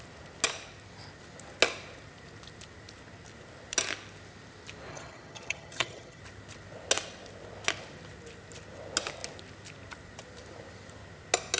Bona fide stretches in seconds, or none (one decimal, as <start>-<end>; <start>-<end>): 0.0-4.9; 6.2-11.6